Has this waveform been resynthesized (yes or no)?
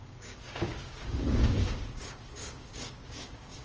yes